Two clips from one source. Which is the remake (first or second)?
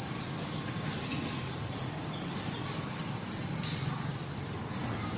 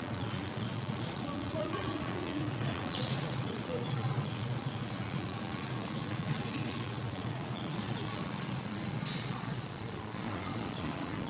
second